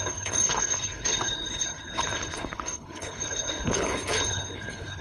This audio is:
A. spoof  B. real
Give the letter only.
A